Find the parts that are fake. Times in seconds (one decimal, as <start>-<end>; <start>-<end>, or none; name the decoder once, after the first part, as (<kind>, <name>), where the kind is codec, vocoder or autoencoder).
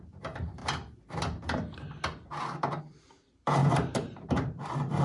0.0-0.6 (vocoder, BigVGAN v2); 2.8-5.0